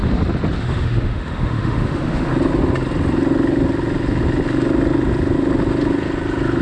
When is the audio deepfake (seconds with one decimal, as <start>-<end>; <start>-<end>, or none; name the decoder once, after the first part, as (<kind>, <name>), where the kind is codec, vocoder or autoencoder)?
0.6-2.3 (autoencoder, DAC-VAE)